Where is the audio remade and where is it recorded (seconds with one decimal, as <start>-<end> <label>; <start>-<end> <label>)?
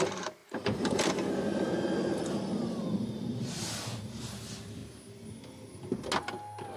0.0-4.8 remade; 4.8-6.8 recorded